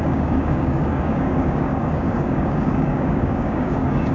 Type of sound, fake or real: fake